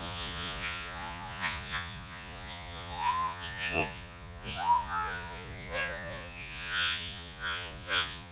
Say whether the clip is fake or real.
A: fake